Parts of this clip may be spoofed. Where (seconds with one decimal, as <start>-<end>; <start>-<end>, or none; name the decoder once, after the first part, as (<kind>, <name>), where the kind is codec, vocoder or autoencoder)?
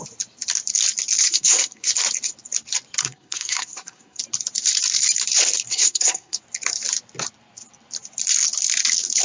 1.3-1.9 (codec, SNAC); 3.0-4.2; 5.7-6.4